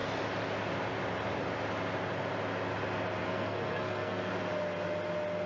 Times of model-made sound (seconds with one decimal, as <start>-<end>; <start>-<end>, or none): 3.2-4.3